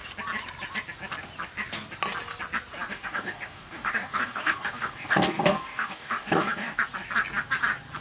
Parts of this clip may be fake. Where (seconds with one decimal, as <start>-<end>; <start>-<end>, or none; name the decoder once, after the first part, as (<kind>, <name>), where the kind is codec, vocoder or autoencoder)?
2.9-6.8 (codec, DAC)